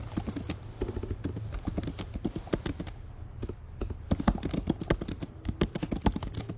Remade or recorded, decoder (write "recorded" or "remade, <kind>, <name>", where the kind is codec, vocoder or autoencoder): recorded